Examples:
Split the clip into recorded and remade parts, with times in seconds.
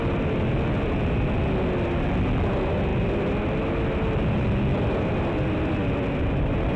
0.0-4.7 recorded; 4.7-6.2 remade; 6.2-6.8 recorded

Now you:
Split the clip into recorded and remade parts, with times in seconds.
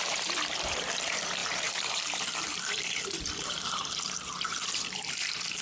0.0-5.6 remade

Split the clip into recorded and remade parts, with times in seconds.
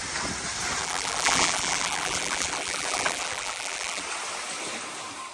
0.0-0.8 recorded; 0.8-4.0 remade; 4.0-5.3 recorded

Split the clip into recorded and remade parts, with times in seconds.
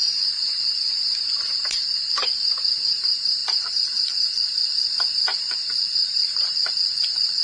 0.0-3.4 recorded; 3.4-7.4 remade